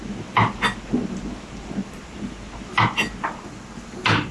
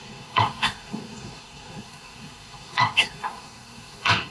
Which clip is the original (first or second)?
first